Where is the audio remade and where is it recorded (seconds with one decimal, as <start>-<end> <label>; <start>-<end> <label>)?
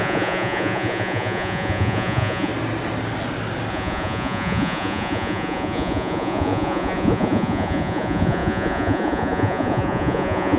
0.0-2.5 remade; 2.5-3.7 recorded; 3.7-10.6 remade